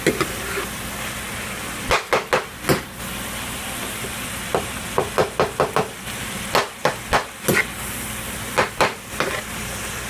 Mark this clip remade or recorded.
recorded